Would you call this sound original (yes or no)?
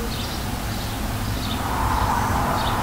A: yes